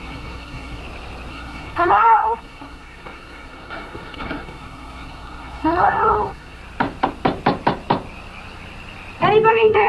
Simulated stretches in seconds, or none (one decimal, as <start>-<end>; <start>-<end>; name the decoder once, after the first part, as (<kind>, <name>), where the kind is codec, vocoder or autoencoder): 0.0-0.8 (codec, SNAC); 1.3-6.6; 9.5-9.9